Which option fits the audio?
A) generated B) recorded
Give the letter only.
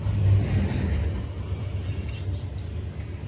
B